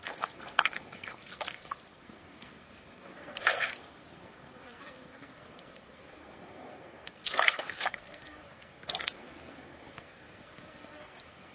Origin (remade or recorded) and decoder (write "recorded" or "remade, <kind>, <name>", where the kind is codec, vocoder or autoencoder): remade, codec, SNAC